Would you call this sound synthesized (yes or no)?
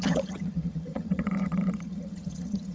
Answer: yes